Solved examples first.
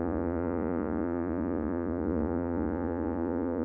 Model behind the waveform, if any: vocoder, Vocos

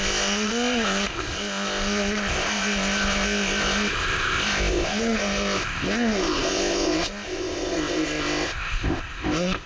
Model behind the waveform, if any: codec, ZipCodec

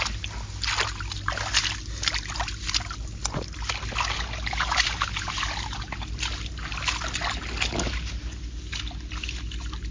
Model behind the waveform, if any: none